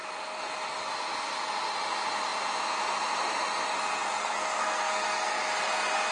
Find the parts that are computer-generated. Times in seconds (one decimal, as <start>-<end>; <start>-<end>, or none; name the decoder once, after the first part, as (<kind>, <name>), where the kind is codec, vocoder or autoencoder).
4.2-5.4 (codec, SNAC)